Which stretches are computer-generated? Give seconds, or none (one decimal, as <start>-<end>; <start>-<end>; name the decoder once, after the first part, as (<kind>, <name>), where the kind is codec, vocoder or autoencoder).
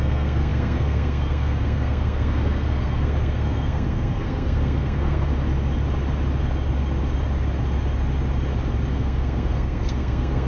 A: 0.0-5.3 (codec, SNAC); 8.9-10.5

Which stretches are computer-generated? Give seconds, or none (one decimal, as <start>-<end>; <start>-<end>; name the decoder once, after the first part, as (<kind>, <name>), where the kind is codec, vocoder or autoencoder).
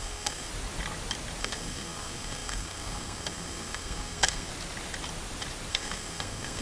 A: 0.0-0.5 (codec, SNAC); 1.4-4.5; 5.7-6.6